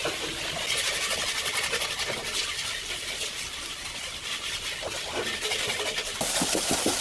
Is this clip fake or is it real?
real